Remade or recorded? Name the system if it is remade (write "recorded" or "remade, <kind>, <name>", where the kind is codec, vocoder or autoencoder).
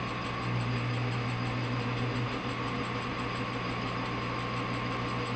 recorded